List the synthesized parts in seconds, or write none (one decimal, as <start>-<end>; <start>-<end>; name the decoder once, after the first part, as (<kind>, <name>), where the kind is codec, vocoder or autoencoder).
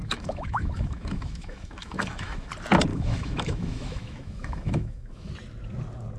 0.0-2.5 (autoencoder, DAC-VAE); 2.9-5.3